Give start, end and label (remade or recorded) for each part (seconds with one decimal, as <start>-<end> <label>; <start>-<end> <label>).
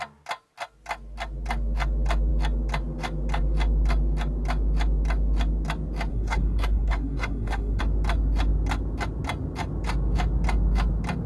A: 0.0-6.1 recorded; 6.1-7.8 remade; 7.8-11.3 recorded